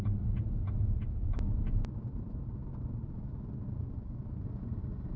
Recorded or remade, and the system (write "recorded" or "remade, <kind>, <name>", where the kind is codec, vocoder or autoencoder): recorded